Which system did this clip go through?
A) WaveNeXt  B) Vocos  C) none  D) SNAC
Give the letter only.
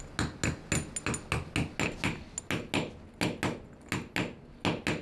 C